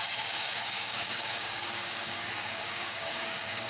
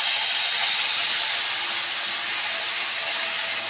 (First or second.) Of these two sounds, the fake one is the first